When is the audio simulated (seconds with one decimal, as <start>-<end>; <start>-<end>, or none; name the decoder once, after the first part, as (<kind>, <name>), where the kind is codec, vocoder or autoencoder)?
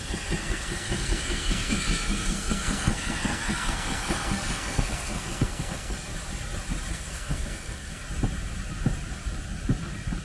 0.0-6.1 (codec, SNAC); 6.9-8.0